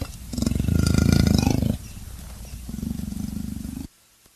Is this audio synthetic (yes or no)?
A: no